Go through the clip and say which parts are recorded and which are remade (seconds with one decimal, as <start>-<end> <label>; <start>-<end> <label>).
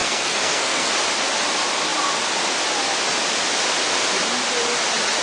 0.0-0.9 remade; 0.9-5.2 recorded